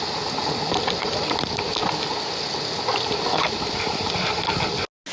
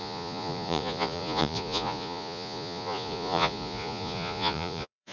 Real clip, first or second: first